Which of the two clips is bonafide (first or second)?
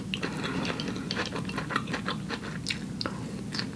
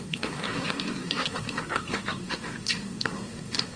first